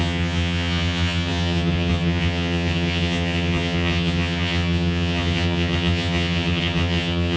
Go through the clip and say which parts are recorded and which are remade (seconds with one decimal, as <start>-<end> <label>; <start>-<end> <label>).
0.0-7.4 remade

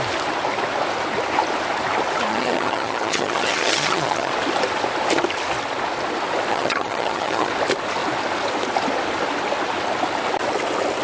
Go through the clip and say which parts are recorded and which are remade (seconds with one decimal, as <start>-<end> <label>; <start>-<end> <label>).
0.0-2.3 recorded; 2.3-4.3 remade; 4.3-6.5 recorded; 6.5-7.5 remade; 7.5-11.0 recorded

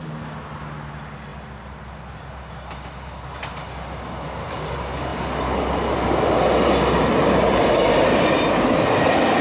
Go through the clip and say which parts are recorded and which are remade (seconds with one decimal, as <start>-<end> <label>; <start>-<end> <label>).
0.0-9.4 recorded

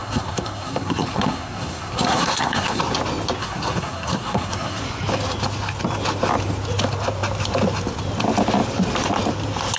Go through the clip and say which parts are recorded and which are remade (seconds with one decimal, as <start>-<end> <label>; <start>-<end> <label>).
0.0-2.8 remade; 2.8-3.4 recorded; 3.4-4.8 remade; 4.8-9.8 recorded

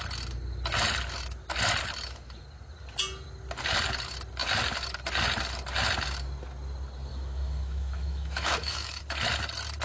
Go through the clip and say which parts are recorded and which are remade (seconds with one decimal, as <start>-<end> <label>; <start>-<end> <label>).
0.0-7.1 recorded; 7.1-9.0 remade; 9.0-9.8 recorded

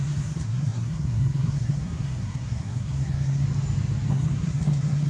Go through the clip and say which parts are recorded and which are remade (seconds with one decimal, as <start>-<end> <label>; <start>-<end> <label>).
0.0-3.4 remade; 3.4-4.1 recorded; 4.1-5.1 remade

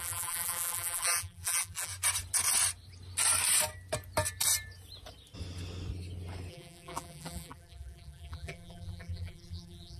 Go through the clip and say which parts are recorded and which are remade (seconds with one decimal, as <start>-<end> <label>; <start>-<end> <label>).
0.0-1.9 remade; 1.9-6.5 recorded; 6.5-10.0 remade

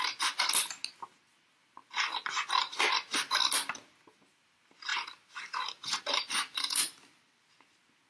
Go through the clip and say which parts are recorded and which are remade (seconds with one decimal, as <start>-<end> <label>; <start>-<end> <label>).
0.0-1.8 recorded; 1.8-2.9 remade; 2.9-4.9 recorded; 4.9-7.4 remade; 7.4-8.1 recorded